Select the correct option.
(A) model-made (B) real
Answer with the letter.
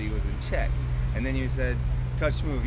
B